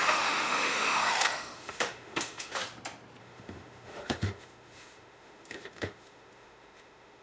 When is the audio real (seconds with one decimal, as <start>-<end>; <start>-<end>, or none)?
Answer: 2.6-3.2